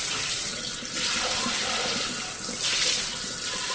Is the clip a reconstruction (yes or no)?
no